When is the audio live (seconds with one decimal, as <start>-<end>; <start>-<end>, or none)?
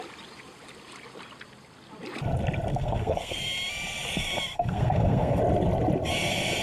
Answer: 0.0-2.7; 3.4-4.5; 5.4-6.6